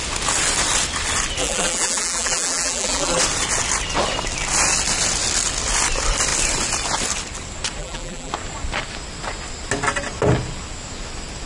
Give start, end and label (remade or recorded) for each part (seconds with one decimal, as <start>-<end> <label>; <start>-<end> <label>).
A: 0.0-1.4 recorded; 1.4-3.2 remade; 3.2-7.8 recorded; 7.8-8.3 remade; 8.3-11.5 recorded

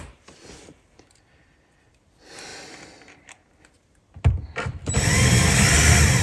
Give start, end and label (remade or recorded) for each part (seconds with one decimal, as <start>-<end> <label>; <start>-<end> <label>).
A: 0.0-6.2 recorded

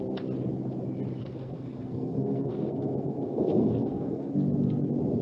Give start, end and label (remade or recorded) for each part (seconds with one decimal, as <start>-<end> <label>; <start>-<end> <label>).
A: 0.0-1.2 recorded; 1.2-4.3 remade; 4.3-5.2 recorded

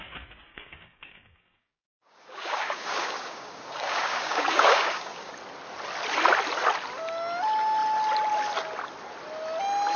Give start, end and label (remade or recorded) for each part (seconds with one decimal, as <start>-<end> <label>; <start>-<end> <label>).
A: 0.0-0.5 recorded; 0.5-5.3 remade; 5.3-10.0 recorded

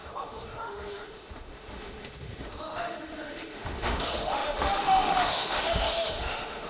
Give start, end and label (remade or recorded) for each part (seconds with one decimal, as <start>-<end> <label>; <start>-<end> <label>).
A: 0.0-6.7 remade

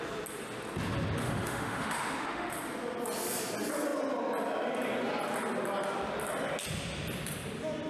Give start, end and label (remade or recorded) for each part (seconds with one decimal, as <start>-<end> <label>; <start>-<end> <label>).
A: 0.0-1.2 recorded; 1.2-2.5 remade; 2.5-7.9 recorded

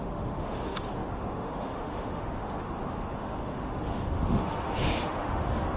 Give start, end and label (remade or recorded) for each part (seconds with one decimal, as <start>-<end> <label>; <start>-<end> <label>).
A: 0.0-5.8 remade

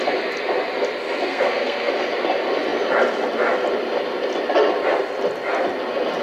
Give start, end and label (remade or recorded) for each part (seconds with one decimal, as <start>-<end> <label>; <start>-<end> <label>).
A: 0.0-1.3 recorded; 1.3-1.9 remade; 1.9-6.2 recorded